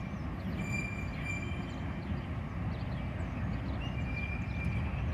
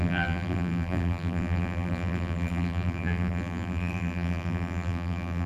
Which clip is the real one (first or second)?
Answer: first